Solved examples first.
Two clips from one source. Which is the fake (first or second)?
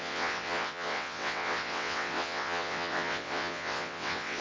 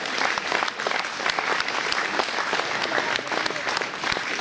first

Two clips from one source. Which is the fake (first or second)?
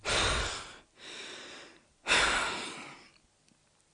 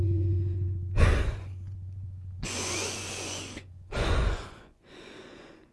second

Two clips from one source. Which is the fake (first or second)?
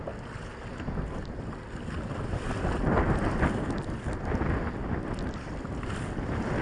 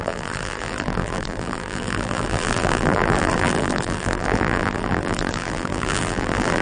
second